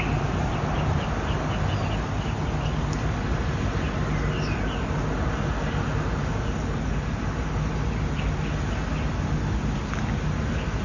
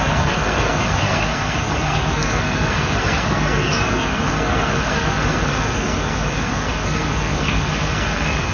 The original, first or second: first